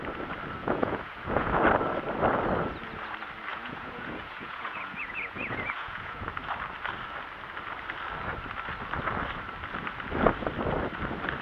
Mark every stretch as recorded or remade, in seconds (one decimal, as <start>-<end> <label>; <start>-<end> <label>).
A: 0.0-0.6 recorded; 0.6-1.6 remade; 1.6-3.5 recorded; 3.5-6.3 remade; 6.3-11.4 recorded